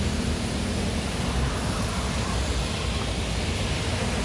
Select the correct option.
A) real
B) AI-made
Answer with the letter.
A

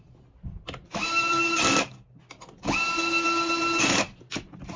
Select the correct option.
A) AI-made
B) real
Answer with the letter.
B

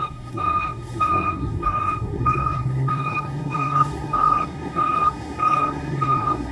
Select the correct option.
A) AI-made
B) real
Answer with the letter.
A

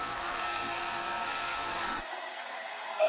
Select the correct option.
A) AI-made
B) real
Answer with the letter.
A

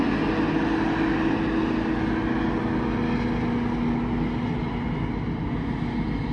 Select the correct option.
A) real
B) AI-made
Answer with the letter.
A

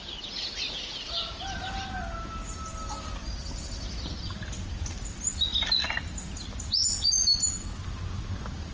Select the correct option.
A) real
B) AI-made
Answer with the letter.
A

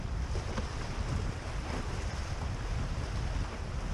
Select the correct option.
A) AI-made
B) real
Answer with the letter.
B